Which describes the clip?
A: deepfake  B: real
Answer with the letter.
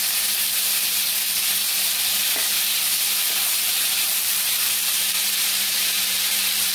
A